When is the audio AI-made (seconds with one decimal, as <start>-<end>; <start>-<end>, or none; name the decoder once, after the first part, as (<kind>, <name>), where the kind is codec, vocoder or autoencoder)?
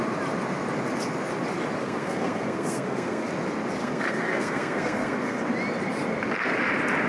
1.8-3.3 (codec, SNAC); 3.8-5.4